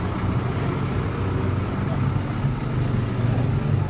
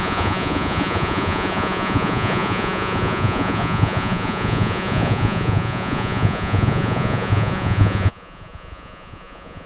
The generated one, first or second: second